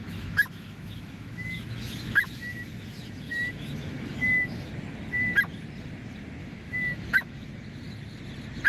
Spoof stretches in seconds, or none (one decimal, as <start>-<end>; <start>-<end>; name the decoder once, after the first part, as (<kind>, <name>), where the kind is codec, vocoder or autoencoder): 0.0-4.7 (autoencoder, DAC-VAE); 6.4-7.6